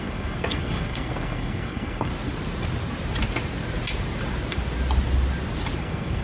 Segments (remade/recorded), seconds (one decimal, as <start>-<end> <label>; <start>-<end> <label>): 0.0-2.1 remade; 2.1-5.8 recorded; 5.8-6.2 remade